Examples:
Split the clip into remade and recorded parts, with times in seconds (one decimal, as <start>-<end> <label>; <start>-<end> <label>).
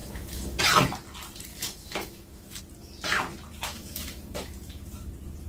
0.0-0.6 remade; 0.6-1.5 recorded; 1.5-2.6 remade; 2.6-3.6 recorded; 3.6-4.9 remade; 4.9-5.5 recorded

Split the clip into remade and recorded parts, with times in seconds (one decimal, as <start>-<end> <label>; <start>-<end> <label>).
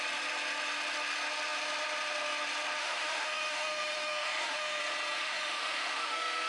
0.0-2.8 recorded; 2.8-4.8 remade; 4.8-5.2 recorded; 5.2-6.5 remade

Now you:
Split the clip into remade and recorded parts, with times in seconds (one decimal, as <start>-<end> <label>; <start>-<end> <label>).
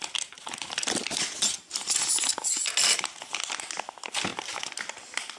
0.0-5.4 recorded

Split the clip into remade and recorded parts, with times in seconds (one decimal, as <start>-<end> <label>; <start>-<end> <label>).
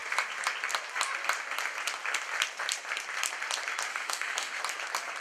0.0-3.9 recorded; 3.9-4.6 remade; 4.6-5.2 recorded